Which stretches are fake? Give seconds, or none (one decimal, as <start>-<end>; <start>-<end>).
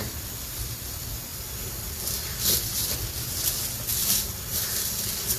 1.3-2.6; 3.9-5.4